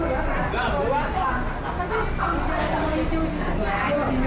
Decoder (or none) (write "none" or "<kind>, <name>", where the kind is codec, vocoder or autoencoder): none